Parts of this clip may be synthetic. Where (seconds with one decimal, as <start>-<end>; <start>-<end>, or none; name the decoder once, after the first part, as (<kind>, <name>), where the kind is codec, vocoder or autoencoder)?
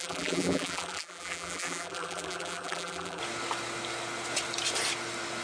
0.0-3.2 (vocoder, BigVGAN v2)